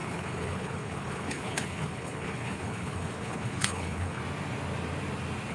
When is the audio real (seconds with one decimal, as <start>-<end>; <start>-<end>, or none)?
4.2-5.5